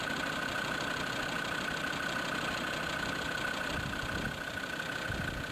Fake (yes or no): no